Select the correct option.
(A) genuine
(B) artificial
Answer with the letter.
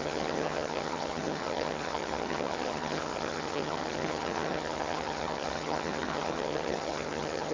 B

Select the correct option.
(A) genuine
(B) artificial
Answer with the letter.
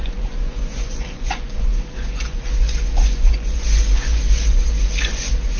B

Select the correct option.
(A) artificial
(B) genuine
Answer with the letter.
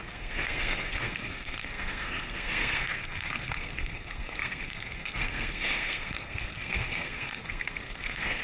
A